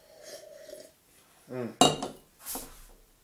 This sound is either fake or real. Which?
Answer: real